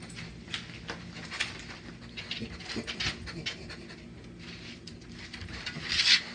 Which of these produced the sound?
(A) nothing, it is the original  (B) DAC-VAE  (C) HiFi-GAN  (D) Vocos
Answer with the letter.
A